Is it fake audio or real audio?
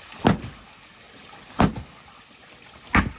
real